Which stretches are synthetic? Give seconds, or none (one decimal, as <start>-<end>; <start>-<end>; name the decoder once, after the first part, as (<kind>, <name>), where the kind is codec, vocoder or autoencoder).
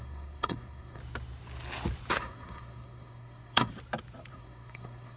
0.0-1.0 (codec, SNAC); 2.2-3.7; 4.3-5.2